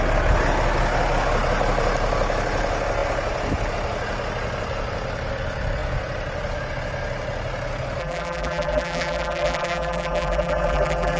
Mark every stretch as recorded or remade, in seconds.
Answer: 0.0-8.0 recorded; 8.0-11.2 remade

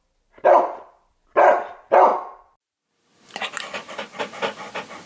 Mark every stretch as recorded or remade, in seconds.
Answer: 0.0-5.1 recorded